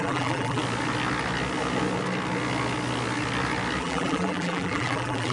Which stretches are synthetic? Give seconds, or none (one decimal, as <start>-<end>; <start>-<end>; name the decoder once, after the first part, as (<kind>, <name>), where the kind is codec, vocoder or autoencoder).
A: 0.0-0.6 (vocoder, BigVGAN v2); 3.8-5.3